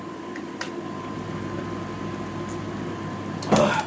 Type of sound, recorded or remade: recorded